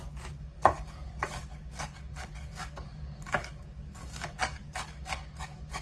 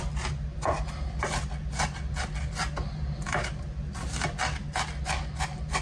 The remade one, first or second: first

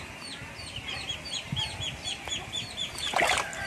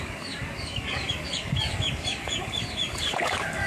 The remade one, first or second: second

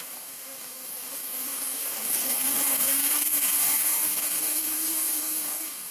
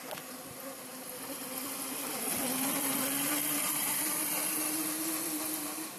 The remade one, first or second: first